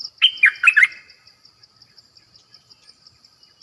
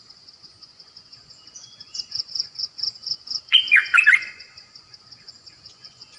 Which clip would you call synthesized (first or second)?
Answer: second